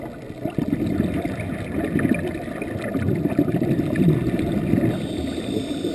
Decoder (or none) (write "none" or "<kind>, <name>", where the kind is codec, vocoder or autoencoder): none